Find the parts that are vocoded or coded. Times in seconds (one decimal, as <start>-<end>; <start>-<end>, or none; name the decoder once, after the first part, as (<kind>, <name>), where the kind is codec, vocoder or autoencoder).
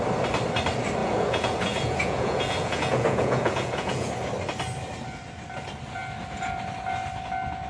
1.0-4.1 (vocoder, Vocos)